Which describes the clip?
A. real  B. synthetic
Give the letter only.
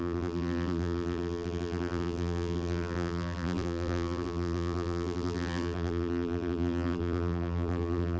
B